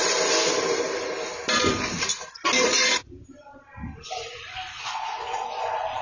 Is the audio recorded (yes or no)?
no